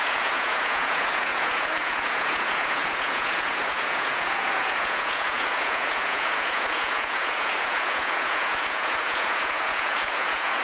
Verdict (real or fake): fake